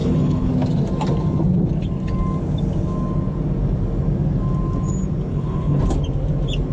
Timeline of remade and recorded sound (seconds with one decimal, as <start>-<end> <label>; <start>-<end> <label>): 0.0-0.5 remade; 0.5-5.3 recorded; 5.3-5.8 remade; 5.8-6.7 recorded